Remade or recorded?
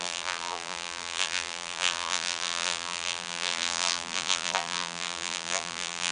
remade